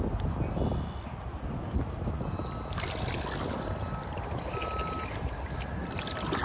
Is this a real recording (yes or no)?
yes